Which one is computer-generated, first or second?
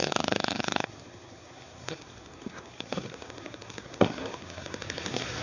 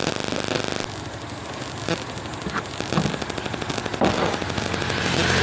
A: first